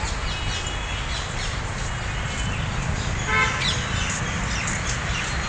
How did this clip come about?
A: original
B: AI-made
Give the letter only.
A